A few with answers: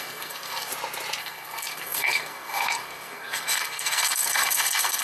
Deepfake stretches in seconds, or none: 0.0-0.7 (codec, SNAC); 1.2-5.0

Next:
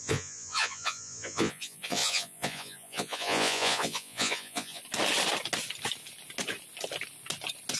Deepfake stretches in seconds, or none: 0.0-4.8 (vocoder, Vocos)

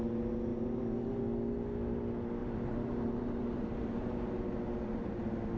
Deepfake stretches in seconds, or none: 0.5-1.2 (vocoder, BigVGAN v2); 2.4-4.0

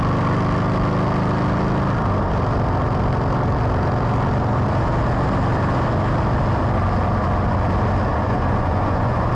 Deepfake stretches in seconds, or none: 8.1-9.3 (vocoder, Vocos)